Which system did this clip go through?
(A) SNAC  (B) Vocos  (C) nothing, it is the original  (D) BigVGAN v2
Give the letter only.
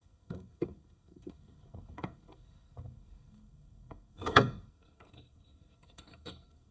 A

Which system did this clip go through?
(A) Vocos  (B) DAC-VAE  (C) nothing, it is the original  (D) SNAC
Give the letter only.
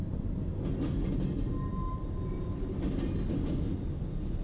C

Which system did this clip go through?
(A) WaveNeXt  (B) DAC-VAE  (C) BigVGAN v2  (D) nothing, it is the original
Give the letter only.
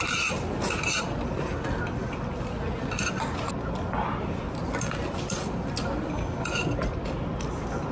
D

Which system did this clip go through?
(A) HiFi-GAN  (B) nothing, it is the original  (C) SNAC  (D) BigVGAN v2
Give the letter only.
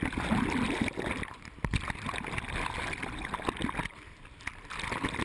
B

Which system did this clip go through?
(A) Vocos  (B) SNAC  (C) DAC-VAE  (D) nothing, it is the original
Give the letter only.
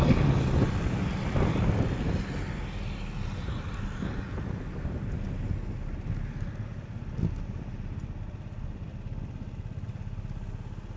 D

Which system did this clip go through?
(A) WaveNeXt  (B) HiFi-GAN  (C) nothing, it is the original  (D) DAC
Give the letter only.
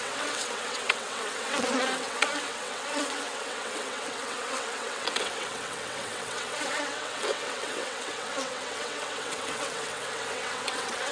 A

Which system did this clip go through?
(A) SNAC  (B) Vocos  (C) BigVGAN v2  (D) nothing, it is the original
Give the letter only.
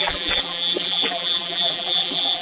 C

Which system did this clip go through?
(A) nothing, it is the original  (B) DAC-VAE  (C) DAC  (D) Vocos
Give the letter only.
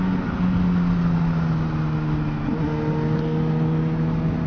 A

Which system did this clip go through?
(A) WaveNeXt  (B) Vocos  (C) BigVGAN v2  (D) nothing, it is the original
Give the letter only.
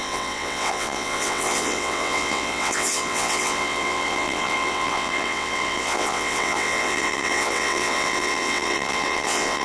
A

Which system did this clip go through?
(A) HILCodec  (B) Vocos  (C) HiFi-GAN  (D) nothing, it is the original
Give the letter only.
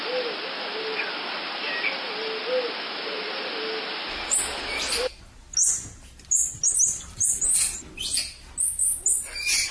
D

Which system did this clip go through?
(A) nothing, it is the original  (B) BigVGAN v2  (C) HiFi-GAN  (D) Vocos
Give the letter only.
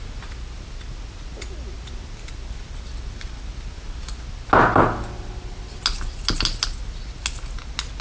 A